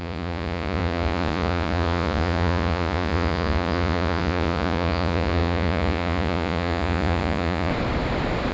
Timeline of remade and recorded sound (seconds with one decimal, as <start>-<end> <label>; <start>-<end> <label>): 0.0-7.7 remade; 7.7-8.5 recorded